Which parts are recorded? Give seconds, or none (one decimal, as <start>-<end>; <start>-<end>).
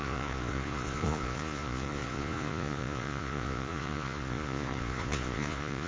none